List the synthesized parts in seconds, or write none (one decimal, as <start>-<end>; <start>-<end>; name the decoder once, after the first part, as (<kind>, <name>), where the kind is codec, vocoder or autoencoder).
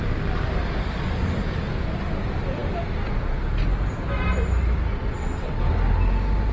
5.1-5.6 (vocoder, WaveNeXt)